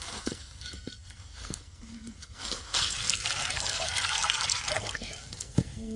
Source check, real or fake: fake